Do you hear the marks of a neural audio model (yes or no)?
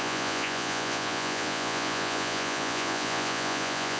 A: yes